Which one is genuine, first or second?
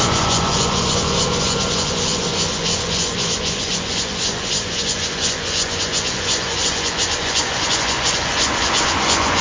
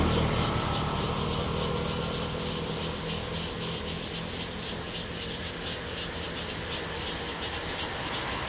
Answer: second